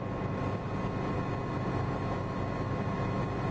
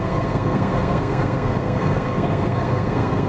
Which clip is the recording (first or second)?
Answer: first